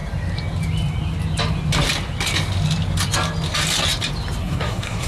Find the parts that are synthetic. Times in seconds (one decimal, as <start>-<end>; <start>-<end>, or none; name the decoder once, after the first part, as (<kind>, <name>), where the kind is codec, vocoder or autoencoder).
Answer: 4.4-5.1 (codec, SNAC)